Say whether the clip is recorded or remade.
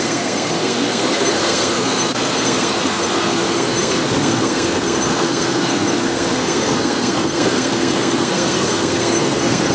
remade